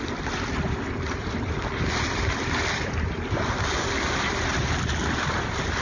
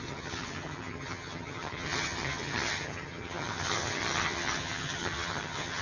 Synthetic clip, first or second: second